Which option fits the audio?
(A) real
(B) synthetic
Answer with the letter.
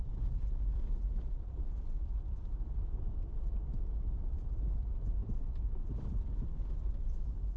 B